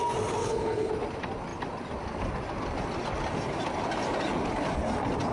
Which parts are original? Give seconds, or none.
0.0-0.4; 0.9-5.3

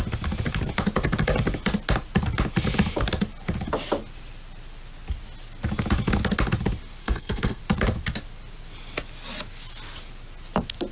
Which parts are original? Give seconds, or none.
0.0-7.0; 7.6-10.9

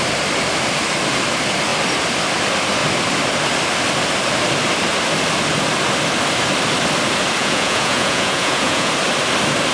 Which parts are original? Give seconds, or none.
0.0-7.4; 8.9-9.7

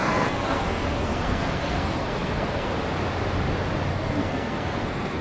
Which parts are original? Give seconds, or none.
2.7-3.9

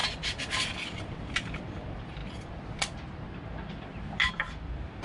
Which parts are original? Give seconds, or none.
2.2-4.3

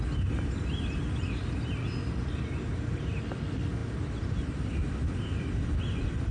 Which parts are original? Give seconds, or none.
0.0-6.3

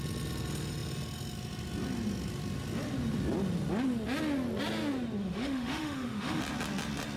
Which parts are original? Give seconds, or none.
0.0-5.2; 6.4-7.2

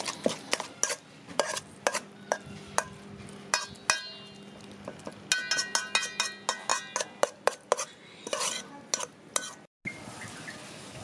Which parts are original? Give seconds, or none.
0.0-11.0